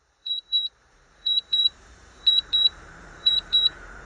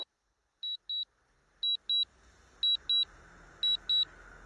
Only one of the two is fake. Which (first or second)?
first